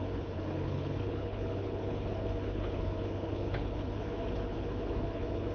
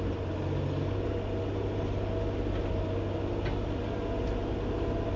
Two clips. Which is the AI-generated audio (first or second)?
first